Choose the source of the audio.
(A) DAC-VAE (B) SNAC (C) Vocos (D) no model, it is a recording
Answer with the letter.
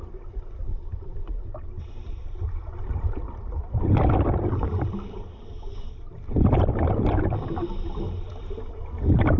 D